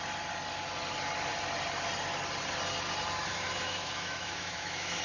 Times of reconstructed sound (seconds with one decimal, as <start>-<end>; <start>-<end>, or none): 3.3-5.0